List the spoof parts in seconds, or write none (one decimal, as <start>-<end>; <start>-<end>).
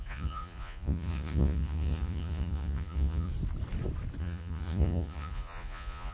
0.0-3.3; 4.2-6.1